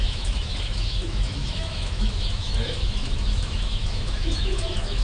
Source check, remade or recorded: remade